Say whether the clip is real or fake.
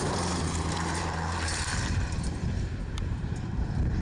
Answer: fake